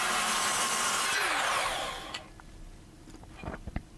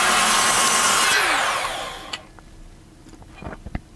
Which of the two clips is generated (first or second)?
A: first